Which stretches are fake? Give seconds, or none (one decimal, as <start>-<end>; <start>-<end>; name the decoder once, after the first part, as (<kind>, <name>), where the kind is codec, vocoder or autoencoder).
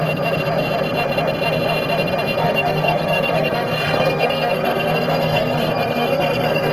2.4-6.7 (codec, SNAC)